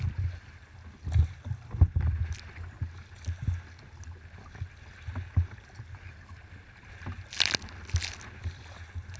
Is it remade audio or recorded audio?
recorded